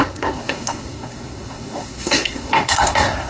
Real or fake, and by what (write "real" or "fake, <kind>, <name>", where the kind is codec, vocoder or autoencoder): fake, codec, SNAC